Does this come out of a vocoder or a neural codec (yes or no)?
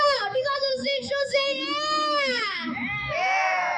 yes